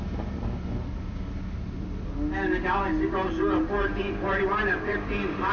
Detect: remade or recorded recorded